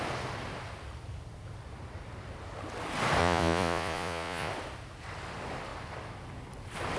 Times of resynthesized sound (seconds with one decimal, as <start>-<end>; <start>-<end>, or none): 3.2-4.5